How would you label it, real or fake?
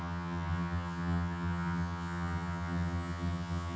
fake